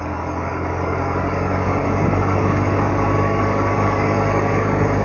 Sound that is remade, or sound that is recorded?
remade